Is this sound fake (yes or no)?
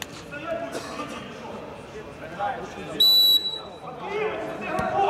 no